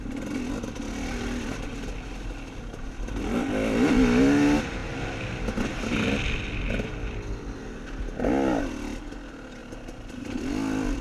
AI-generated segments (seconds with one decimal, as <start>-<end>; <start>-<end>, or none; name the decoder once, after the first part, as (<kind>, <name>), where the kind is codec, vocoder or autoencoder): none